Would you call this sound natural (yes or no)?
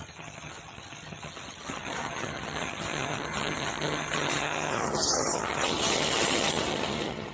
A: no